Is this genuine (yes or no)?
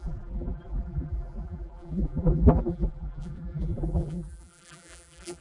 no